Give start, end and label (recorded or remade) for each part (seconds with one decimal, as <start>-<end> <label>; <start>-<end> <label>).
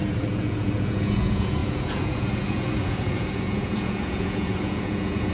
0.0-5.3 remade